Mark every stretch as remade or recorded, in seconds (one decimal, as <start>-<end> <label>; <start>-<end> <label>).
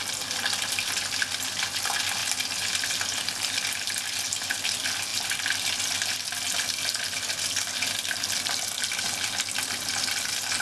0.0-10.6 recorded